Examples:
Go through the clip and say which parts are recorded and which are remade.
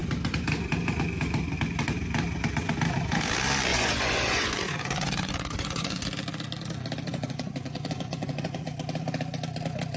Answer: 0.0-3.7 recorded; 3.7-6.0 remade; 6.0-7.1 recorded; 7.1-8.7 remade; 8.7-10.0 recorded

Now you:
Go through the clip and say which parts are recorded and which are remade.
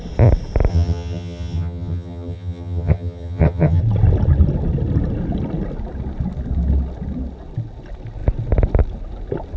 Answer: 0.0-0.7 recorded; 0.7-3.8 remade; 3.8-9.6 recorded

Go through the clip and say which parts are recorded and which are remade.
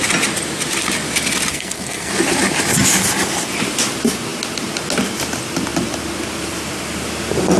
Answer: 0.0-1.5 recorded; 1.5-2.1 remade; 2.1-7.6 recorded